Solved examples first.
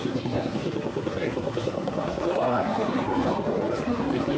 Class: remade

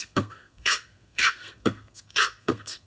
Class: remade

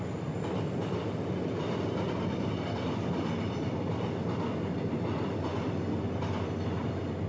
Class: recorded